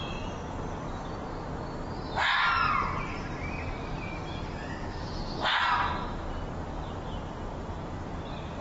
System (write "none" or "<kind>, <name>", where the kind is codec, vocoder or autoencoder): none